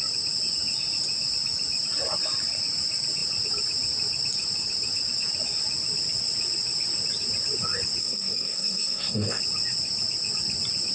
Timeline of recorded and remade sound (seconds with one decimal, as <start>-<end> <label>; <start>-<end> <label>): 0.0-8.0 recorded; 8.0-9.4 remade; 9.4-10.9 recorded